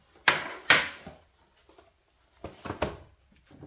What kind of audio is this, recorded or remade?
recorded